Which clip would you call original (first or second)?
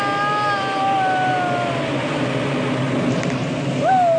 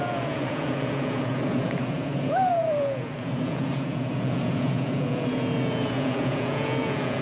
first